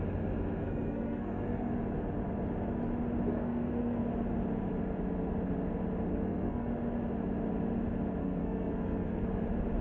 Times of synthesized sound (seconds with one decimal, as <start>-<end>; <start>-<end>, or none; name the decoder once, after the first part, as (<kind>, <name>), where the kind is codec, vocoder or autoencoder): 0.6-1.8 (codec, SNAC); 3.3-4.0; 6.1-6.7; 8.2-9.4